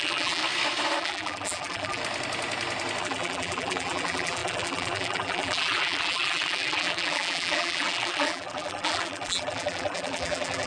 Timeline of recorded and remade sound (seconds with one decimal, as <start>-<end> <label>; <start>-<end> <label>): 0.0-0.4 remade; 0.4-1.0 recorded; 1.0-2.0 remade; 2.0-3.0 recorded; 3.0-10.7 remade